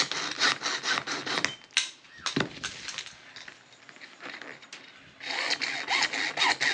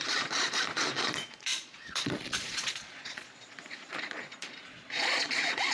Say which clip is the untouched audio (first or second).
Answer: first